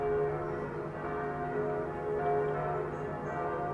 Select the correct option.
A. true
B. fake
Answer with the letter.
A